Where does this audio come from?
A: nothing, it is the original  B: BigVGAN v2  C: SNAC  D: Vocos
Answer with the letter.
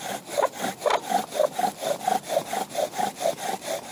A